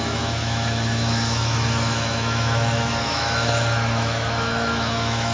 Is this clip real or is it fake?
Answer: fake